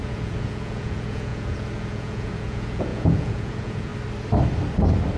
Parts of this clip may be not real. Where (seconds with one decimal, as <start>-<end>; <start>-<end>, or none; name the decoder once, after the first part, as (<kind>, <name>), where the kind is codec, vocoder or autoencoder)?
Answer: 0.0-3.9 (vocoder, Vocos)